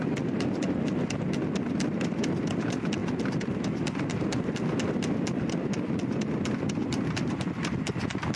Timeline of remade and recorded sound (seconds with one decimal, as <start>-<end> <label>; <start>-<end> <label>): 0.0-8.4 recorded